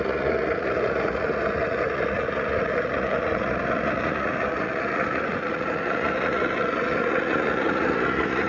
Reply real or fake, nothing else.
fake